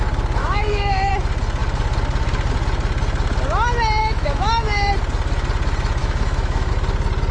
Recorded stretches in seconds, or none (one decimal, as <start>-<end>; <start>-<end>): 0.0-0.4; 1.1-4.0; 4.9-6.0; 6.7-7.3